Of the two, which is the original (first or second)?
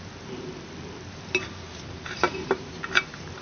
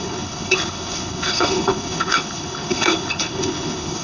first